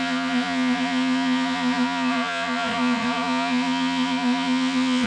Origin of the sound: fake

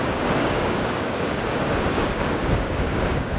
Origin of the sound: fake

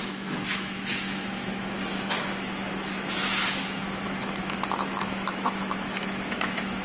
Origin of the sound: fake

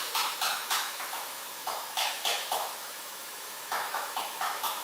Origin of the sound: fake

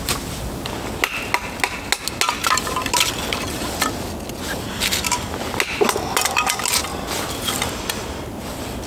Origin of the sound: real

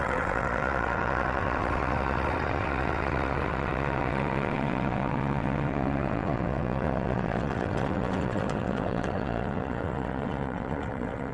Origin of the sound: fake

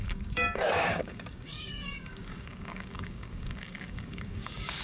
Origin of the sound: fake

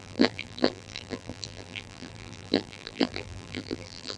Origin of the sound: fake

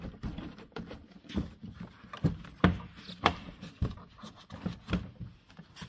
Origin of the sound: real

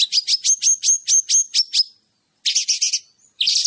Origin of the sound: real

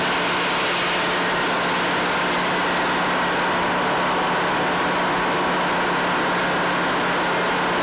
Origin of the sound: real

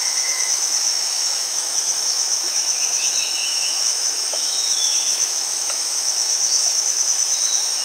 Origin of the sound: fake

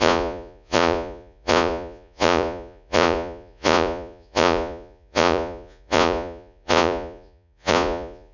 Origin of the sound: fake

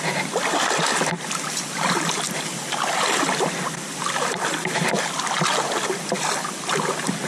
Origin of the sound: real